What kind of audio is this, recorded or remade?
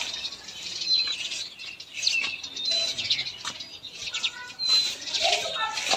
recorded